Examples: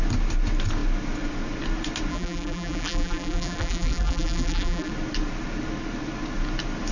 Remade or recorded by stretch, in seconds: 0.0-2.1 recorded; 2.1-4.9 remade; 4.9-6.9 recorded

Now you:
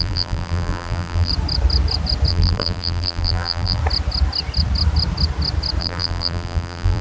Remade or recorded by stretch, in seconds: 0.0-1.3 remade; 1.3-2.3 recorded; 2.3-3.8 remade; 3.8-5.8 recorded; 5.8-7.0 remade

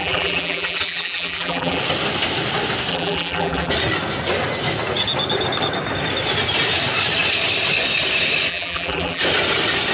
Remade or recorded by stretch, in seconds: 0.0-1.8 remade; 1.8-2.9 recorded; 2.9-3.7 remade; 3.7-8.5 recorded; 8.5-9.2 remade; 9.2-9.9 recorded

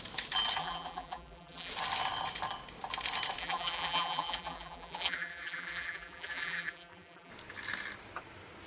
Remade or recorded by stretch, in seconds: 0.0-0.6 recorded; 0.6-1.7 remade; 1.7-3.4 recorded; 3.4-7.3 remade; 7.3-8.7 recorded